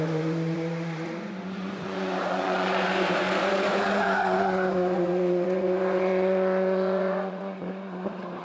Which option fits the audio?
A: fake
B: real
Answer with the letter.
A